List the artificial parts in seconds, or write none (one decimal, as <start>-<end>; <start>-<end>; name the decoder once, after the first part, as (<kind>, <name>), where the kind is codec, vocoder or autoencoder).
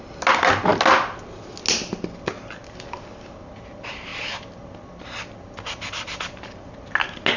none